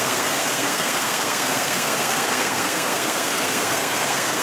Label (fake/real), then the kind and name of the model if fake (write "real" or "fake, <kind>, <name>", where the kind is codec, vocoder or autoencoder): fake, codec, SNAC